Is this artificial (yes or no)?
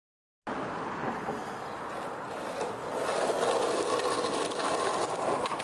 no